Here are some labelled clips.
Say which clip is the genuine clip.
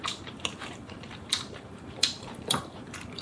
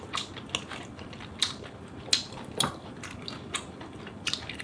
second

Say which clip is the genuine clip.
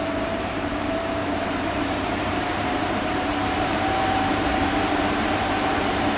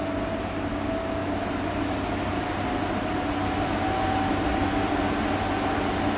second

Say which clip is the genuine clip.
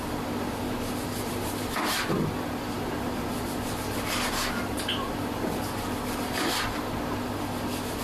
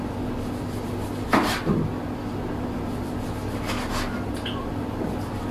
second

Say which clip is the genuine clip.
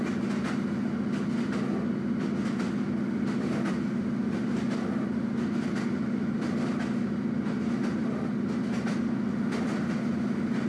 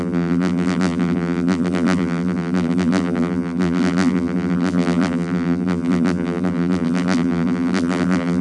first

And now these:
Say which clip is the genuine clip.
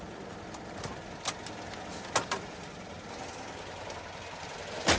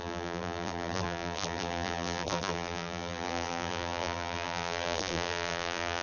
first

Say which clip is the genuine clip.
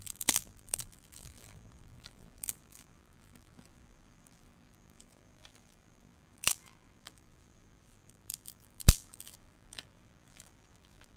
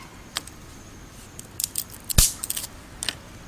second